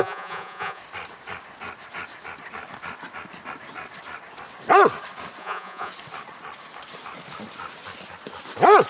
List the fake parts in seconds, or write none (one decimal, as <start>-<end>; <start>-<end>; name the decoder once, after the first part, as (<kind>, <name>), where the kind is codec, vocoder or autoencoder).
0.0-0.8 (vocoder, Vocos); 5.4-5.9